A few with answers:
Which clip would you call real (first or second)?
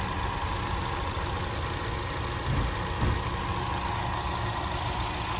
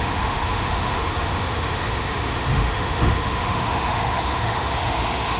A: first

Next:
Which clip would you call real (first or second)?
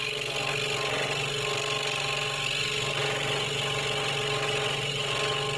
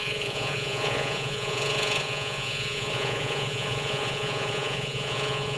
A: first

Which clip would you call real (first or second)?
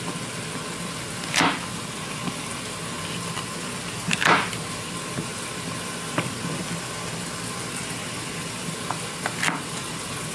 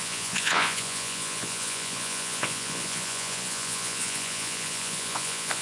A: first